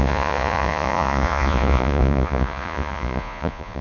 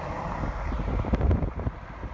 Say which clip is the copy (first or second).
first